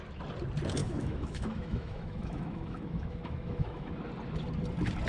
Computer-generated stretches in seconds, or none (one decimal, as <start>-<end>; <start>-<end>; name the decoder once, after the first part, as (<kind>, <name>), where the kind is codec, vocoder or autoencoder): 0.8-3.9 (autoencoder, DAC-VAE)